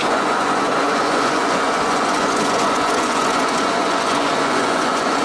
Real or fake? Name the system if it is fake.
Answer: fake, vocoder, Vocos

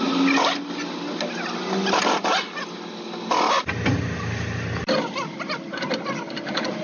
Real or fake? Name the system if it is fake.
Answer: real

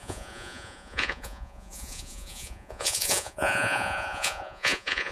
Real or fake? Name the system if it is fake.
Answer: fake, vocoder, Vocos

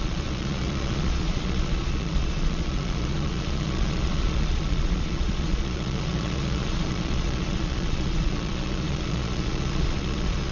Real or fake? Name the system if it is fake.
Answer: fake, vocoder, Vocos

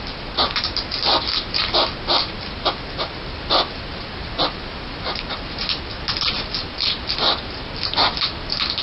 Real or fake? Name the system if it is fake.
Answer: real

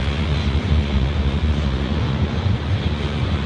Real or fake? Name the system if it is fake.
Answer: fake, vocoder, Vocos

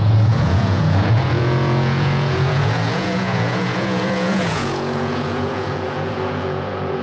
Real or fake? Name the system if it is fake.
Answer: fake, vocoder, Vocos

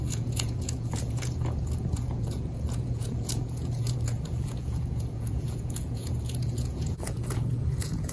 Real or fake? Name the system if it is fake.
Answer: fake, vocoder, Vocos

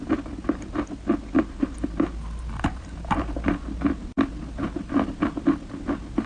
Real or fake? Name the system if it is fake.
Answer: real